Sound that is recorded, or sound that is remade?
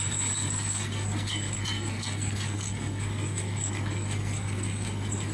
remade